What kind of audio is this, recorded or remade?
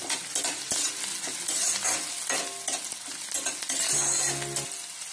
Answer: recorded